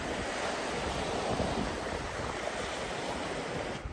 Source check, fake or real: real